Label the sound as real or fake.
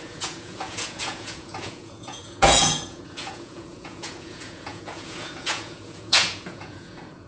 fake